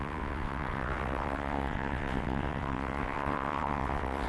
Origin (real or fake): fake